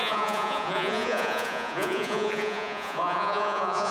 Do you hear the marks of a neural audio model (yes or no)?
yes